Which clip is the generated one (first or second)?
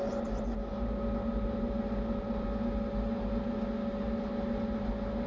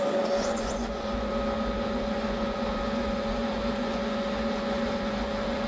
second